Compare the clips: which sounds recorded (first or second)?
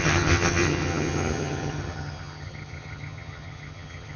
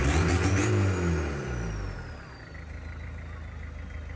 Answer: second